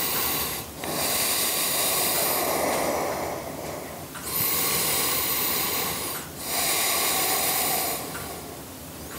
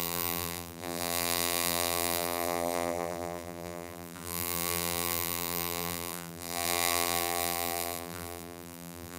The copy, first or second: second